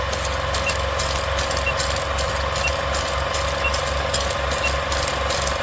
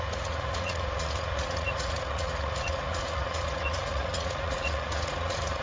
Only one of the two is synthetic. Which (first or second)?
second